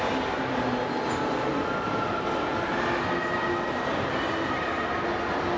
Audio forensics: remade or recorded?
recorded